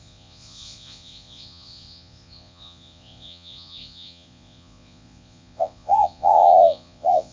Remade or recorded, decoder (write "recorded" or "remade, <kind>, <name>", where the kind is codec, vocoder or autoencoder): remade, vocoder, Vocos